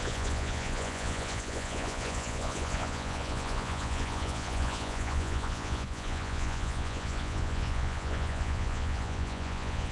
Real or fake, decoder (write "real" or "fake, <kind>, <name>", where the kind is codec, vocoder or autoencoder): fake, vocoder, Vocos